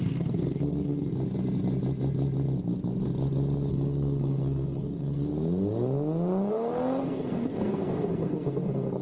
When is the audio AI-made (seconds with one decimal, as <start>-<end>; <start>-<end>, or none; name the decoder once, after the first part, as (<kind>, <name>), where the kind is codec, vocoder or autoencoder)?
0.0-1.1 (codec, SNAC); 3.7-5.3; 6.5-9.0